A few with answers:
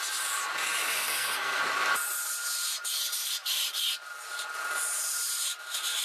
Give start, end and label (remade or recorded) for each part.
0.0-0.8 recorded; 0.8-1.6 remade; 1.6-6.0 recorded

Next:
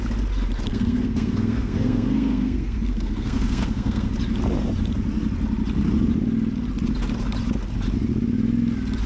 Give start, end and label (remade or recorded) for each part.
0.0-0.7 recorded; 0.7-4.1 remade; 4.1-9.1 recorded

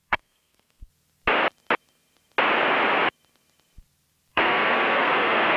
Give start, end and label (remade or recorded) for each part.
0.0-0.9 remade; 0.9-4.3 recorded; 4.3-5.6 remade

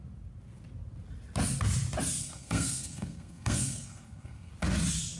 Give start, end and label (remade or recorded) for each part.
0.0-2.2 recorded; 2.2-4.5 remade; 4.5-5.2 recorded

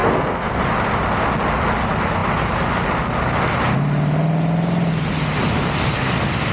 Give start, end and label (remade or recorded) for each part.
0.0-0.6 remade; 0.6-6.5 recorded

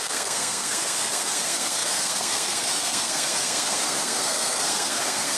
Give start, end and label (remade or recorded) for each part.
0.0-5.4 remade